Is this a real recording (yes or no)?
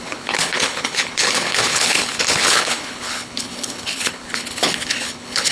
no